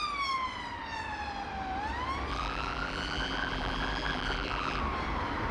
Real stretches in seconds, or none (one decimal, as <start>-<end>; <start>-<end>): 0.0-2.3; 4.8-5.5